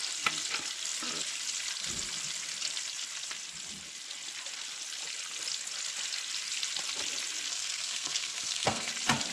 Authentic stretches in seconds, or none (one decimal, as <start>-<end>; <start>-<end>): 0.0-7.5; 8.9-9.3